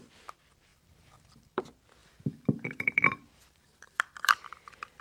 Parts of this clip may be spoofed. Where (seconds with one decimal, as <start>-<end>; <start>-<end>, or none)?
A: 0.7-1.6; 2.0-5.0